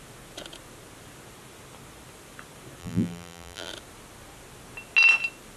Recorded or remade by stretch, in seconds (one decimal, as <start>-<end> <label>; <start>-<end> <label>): 0.0-2.8 recorded; 2.8-3.7 remade; 3.7-5.6 recorded